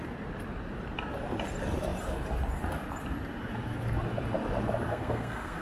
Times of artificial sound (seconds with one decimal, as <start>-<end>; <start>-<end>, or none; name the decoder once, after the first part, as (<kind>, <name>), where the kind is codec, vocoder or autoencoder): 4.9-5.6 (codec, SNAC)